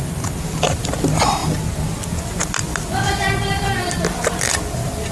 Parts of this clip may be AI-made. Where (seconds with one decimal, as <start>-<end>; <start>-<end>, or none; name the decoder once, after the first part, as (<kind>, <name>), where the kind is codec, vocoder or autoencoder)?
none